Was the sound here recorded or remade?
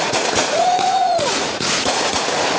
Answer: remade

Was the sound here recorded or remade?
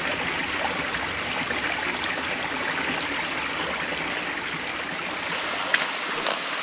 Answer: recorded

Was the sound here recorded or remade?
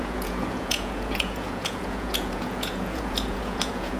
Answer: remade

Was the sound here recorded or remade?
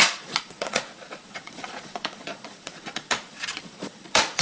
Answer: remade